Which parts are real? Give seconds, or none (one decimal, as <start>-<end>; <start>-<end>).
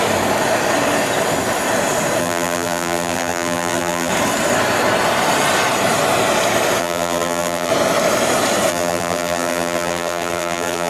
0.0-2.2; 4.1-6.8; 7.7-8.7